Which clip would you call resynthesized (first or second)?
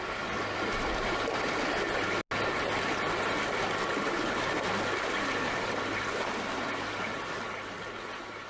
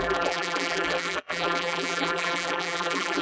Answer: second